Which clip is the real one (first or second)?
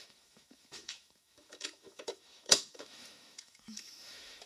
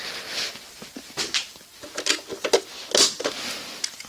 second